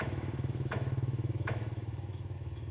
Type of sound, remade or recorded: remade